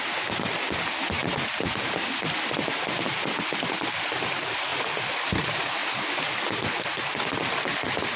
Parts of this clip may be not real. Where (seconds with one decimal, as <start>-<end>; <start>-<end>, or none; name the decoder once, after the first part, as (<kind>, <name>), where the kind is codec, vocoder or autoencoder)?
0.0-1.2 (vocoder, BigVGAN v2); 3.7-4.7; 5.2-5.8; 6.8-8.2